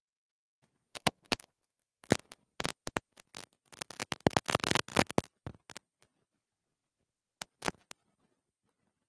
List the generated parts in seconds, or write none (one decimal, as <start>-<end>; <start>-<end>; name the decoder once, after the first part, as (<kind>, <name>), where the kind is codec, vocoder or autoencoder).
0.9-2.1 (codec, SNAC)